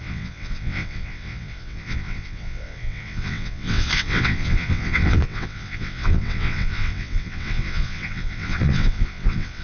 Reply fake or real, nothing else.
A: fake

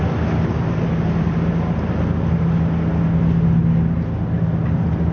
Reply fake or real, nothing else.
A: real